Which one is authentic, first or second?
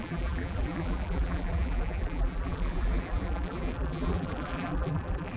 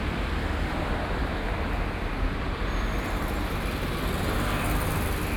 second